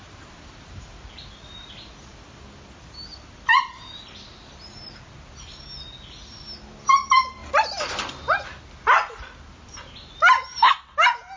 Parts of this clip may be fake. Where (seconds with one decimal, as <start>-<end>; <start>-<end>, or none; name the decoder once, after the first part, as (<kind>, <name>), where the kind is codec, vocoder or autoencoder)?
none